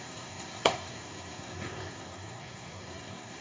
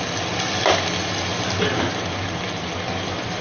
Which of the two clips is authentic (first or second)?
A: second